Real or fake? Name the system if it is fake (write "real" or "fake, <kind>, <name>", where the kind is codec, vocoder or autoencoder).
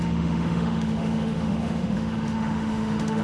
fake, autoencoder, DAC-VAE